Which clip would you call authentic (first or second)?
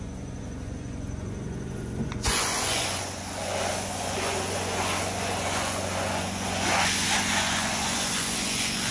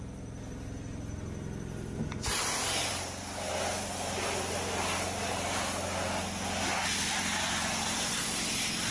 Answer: second